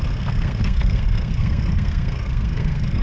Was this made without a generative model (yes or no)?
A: no